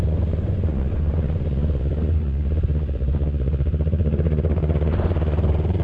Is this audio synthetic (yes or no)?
yes